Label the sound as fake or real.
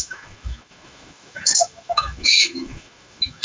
fake